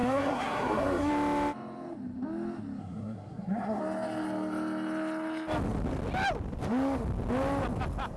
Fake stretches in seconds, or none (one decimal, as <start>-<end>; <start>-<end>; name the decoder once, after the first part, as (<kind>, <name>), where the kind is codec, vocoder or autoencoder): 0.0-1.1 (codec, SNAC); 2.8-3.8